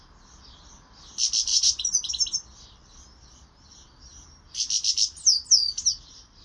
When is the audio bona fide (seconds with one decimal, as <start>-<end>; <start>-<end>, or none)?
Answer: 0.0-1.5; 2.1-6.4